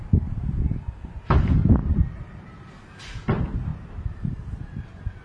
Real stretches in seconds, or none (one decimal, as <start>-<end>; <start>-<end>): 0.0-1.8; 2.7-3.7